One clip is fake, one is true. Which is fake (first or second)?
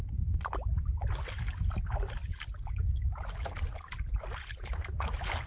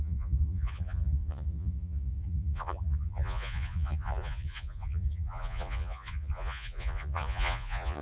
second